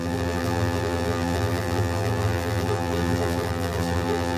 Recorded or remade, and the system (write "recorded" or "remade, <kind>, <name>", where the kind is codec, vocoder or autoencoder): remade, vocoder, BigVGAN v2